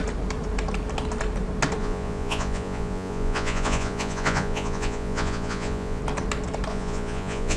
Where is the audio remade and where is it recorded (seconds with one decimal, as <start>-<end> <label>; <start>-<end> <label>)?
0.0-1.8 recorded; 1.8-6.0 remade; 6.0-6.7 recorded; 6.7-7.6 remade